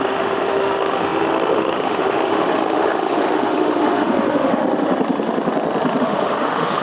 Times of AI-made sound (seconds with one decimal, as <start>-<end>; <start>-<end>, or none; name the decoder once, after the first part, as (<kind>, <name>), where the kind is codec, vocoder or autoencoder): 0.0-4.6 (autoencoder, DAC-VAE); 6.0-6.8